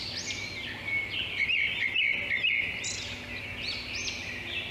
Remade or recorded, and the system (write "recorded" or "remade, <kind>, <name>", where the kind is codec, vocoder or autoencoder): recorded